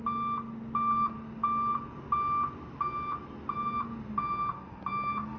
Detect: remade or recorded recorded